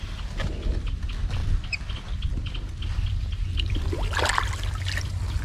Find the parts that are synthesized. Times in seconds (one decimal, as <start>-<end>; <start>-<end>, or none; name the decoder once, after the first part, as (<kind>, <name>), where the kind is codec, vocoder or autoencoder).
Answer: none